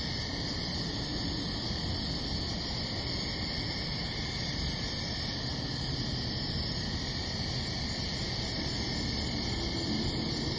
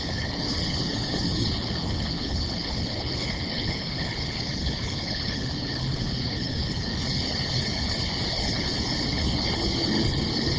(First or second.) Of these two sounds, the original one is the first